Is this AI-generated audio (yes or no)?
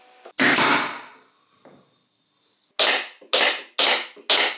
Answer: no